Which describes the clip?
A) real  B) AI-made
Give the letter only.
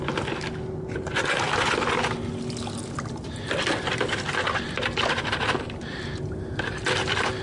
A